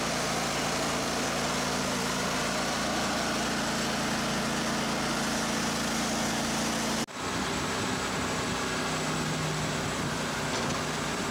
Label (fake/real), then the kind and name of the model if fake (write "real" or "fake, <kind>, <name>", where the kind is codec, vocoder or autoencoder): real